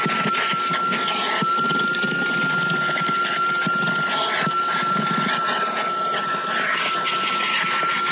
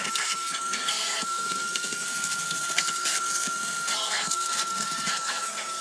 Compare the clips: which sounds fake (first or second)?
second